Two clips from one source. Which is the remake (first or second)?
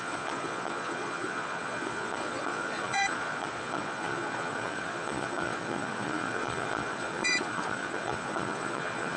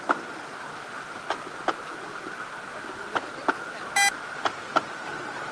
first